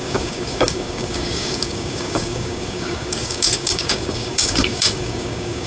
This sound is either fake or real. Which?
fake